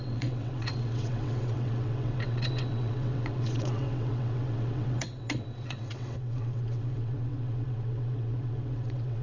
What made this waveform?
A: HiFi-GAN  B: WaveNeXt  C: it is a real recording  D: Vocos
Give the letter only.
B